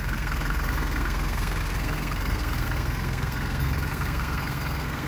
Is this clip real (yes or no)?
no